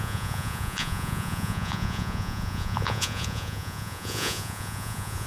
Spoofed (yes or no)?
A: yes